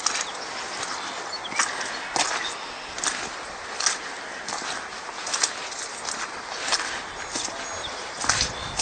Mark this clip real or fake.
real